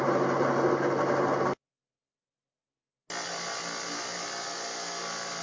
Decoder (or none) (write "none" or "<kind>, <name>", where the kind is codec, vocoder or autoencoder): none